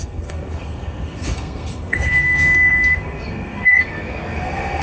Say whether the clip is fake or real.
fake